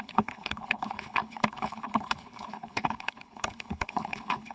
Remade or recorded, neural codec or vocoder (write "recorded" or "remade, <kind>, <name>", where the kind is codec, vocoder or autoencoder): remade, codec, HILCodec